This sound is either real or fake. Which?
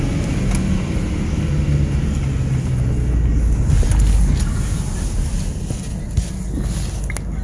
real